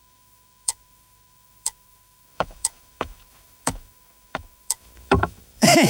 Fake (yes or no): yes